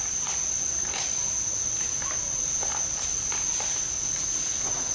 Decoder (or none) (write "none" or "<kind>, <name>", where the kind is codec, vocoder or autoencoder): none